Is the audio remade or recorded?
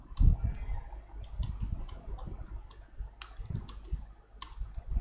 recorded